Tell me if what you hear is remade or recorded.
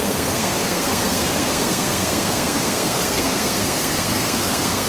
remade